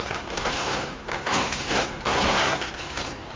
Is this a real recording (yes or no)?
no